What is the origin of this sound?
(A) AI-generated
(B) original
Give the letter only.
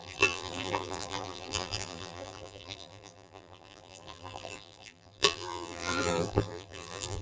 A